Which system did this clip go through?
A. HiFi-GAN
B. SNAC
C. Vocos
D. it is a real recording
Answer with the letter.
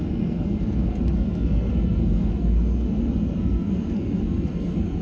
B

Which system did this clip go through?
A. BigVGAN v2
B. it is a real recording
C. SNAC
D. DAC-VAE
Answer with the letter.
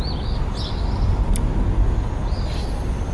B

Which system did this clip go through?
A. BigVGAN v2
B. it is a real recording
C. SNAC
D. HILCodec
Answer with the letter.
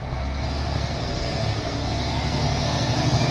C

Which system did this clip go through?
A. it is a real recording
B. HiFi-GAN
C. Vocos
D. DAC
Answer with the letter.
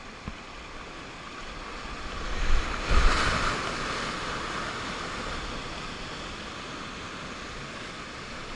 A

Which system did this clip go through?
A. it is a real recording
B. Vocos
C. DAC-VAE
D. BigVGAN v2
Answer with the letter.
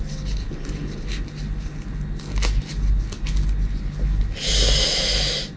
A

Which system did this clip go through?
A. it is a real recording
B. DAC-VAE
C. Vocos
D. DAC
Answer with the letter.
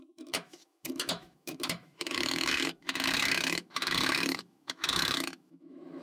B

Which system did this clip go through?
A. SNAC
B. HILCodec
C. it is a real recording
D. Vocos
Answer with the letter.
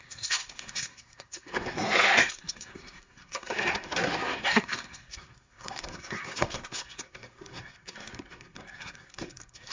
A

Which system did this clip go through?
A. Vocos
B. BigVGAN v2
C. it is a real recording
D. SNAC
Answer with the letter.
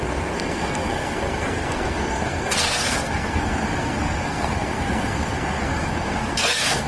D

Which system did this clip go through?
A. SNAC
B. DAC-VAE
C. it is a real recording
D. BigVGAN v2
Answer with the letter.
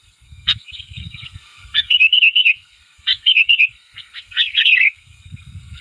A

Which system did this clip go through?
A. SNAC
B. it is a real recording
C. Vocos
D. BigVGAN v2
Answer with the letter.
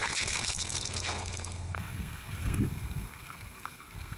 A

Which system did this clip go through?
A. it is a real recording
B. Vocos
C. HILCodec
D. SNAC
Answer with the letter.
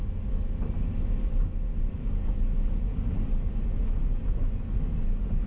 A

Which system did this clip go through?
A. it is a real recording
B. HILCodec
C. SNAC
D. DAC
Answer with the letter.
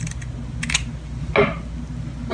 A